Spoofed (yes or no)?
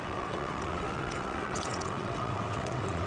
yes